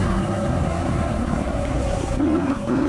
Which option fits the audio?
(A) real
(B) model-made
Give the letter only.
B